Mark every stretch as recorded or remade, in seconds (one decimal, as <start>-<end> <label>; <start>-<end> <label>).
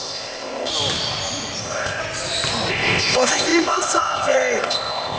0.0-0.7 remade; 0.7-1.6 recorded; 1.6-2.0 remade; 2.0-2.7 recorded; 2.7-5.2 remade